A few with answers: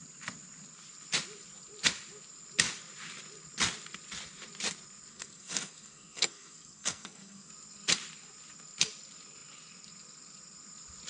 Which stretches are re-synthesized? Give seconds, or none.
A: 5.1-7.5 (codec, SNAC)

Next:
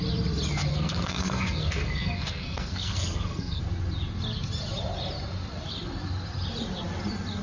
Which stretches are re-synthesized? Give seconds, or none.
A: 0.7-3.6 (codec, SNAC)

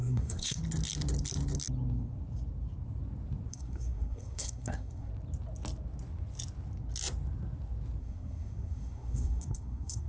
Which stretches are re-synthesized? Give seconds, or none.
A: 0.0-0.6 (codec, SNAC); 3.5-5.1; 8.0-10.1

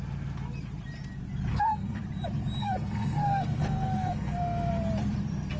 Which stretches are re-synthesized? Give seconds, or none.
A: 1.5-2.0 (codec, SNAC); 2.6-4.7

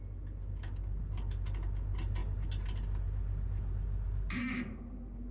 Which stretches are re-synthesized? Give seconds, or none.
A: none

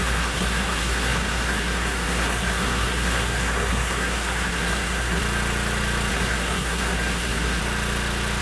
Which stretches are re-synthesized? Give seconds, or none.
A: 0.0-5.2 (codec, SNAC); 6.1-7.6